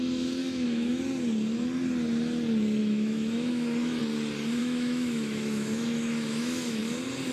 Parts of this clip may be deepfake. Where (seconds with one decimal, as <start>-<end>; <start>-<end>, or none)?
0.4-1.0; 2.8-4.0; 4.6-6.8